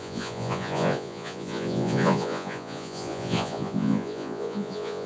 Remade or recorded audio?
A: remade